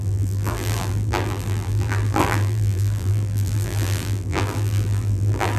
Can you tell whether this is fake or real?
fake